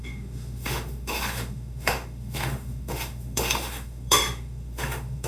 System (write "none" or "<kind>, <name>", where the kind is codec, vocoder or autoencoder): autoencoder, DAC-VAE